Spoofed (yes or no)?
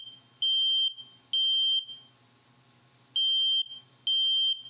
no